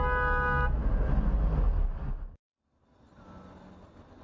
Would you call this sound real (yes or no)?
yes